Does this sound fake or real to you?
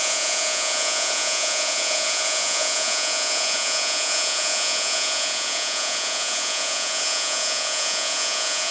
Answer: fake